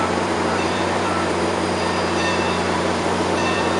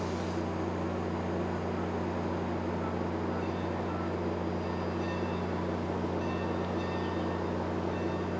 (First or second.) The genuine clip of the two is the second